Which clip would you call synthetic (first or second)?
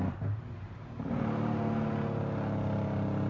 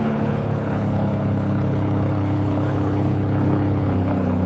second